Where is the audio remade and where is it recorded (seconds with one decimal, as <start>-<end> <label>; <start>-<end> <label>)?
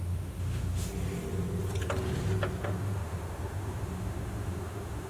0.0-0.9 remade; 0.9-2.6 recorded; 2.6-5.1 remade